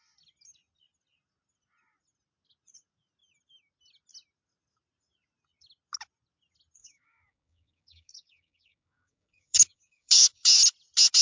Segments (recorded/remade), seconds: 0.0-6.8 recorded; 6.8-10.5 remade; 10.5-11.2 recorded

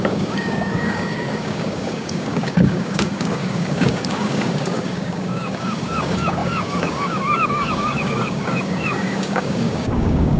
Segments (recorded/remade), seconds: 0.0-10.4 remade